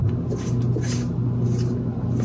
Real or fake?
real